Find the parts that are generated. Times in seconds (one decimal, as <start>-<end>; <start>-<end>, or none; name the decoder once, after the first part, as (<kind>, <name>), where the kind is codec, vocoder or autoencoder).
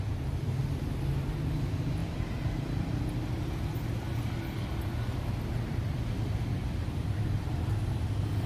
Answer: 2.0-3.0 (vocoder, BigVGAN v2)